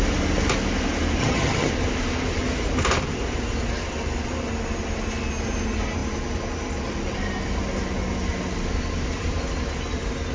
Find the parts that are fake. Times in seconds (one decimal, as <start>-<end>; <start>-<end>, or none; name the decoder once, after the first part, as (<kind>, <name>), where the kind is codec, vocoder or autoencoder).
1.2-1.7 (vocoder, HiFi-GAN)